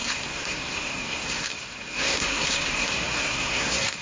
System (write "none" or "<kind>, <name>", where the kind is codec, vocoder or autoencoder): codec, SNAC